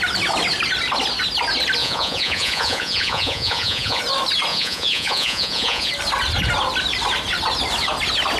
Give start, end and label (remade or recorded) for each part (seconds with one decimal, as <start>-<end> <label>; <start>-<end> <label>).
0.0-1.8 recorded; 1.8-4.0 remade; 4.0-4.5 recorded; 4.5-5.9 remade; 5.9-8.4 recorded

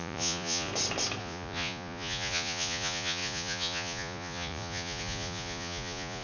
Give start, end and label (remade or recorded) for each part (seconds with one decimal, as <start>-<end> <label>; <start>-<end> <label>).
0.0-0.7 remade; 0.7-1.2 recorded; 1.2-6.2 remade

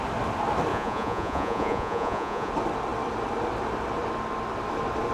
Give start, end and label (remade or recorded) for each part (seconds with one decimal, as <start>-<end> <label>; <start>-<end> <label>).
0.0-0.7 recorded; 0.7-2.5 remade; 2.5-5.1 recorded